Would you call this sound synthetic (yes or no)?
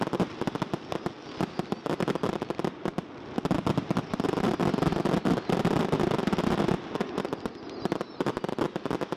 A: no